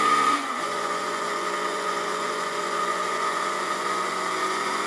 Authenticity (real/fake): fake